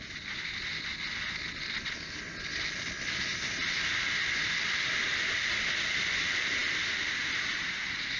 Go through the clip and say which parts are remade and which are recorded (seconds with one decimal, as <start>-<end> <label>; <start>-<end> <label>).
0.0-8.2 recorded